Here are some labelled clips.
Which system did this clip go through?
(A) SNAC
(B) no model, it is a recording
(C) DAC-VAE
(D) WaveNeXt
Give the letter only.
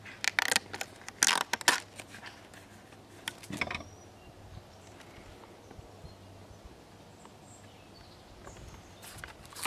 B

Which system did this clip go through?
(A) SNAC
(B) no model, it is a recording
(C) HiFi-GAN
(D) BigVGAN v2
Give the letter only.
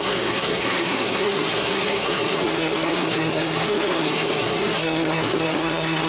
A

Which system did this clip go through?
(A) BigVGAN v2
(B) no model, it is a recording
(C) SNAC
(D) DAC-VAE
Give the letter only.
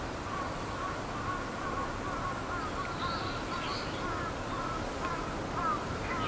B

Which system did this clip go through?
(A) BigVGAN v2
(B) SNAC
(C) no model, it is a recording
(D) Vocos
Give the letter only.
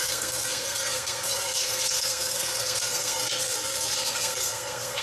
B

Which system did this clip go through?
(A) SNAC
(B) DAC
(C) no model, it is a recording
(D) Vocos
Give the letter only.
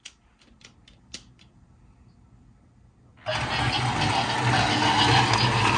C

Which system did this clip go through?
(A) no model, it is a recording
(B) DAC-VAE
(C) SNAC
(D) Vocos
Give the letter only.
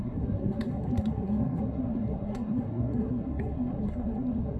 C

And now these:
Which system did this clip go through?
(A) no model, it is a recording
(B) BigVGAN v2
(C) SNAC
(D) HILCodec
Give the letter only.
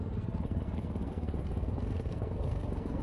C